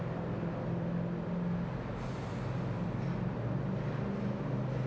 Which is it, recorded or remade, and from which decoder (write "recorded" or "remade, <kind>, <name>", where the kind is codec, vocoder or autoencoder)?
recorded